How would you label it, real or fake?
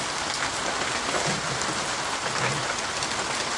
real